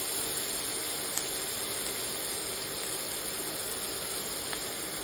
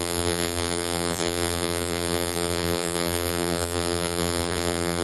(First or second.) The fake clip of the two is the second